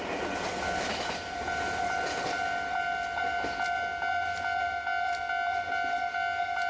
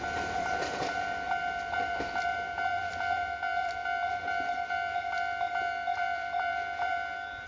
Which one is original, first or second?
first